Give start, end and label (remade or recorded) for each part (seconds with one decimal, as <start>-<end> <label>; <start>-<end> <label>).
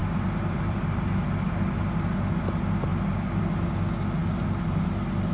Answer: 0.0-0.8 remade; 0.8-2.9 recorded; 2.9-3.4 remade; 3.4-5.3 recorded